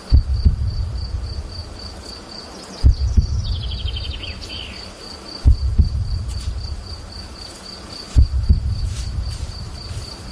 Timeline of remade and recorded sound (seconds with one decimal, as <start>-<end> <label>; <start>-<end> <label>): 0.0-10.3 recorded